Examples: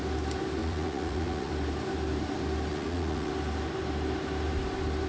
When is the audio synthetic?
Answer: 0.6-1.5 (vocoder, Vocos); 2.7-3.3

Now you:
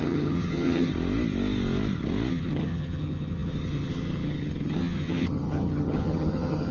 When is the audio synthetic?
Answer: 0.0-0.9 (vocoder, HiFi-GAN); 2.3-6.7

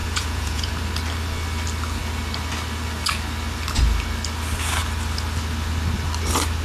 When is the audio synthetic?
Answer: 0.0-0.7 (vocoder, Vocos)

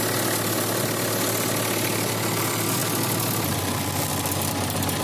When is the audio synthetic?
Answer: none

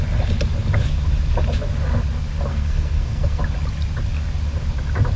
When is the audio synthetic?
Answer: 2.5-3.4 (codec, SNAC)